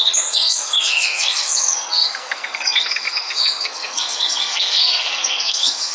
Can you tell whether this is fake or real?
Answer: fake